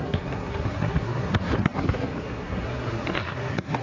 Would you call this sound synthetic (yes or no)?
yes